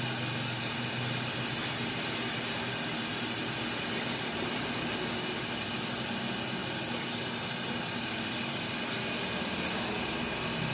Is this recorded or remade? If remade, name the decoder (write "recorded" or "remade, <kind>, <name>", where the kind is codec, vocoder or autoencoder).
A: recorded